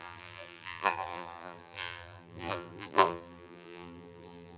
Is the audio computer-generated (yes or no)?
yes